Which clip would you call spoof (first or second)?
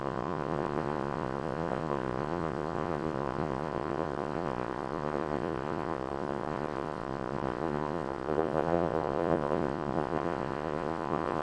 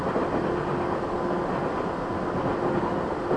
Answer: first